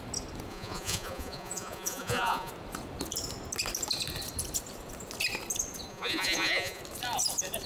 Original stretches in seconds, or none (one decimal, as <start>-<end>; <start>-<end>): 0.0-0.5; 2.5-5.9; 6.8-7.7